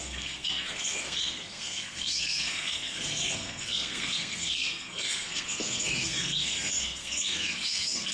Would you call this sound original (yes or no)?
no